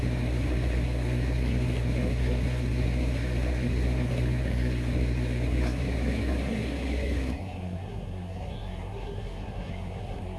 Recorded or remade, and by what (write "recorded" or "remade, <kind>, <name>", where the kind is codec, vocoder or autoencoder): remade, codec, SNAC